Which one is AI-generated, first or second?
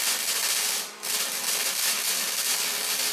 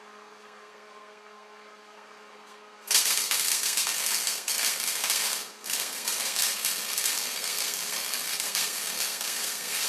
second